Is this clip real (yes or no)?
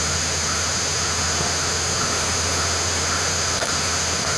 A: no